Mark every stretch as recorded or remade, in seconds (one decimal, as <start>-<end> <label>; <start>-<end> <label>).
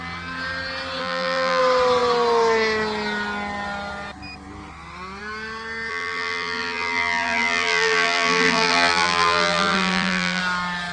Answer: 0.0-1.0 recorded; 1.0-1.6 remade; 1.6-5.9 recorded; 5.9-10.4 remade; 10.4-10.9 recorded